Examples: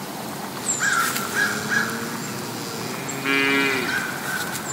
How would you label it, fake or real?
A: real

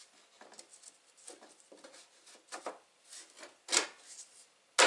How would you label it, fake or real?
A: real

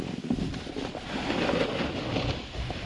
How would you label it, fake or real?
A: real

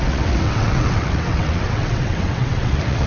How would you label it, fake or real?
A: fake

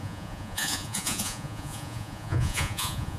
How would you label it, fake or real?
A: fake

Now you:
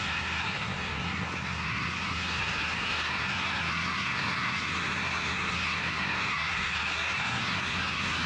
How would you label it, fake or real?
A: fake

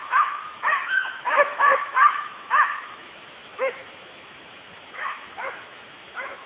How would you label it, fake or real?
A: fake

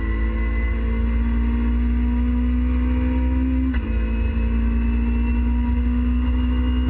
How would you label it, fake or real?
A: real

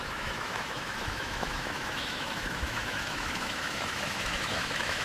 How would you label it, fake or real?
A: fake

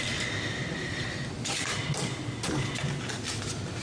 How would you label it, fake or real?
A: real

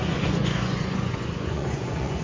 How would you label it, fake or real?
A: fake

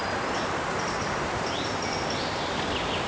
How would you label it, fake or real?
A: real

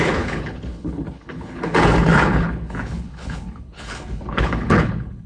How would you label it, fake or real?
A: fake